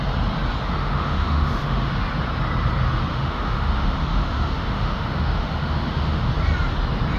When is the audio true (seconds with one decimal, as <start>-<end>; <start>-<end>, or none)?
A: 0.0-0.8; 1.9-3.1; 6.3-7.2